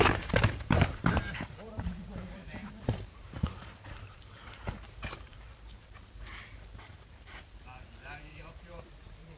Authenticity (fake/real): fake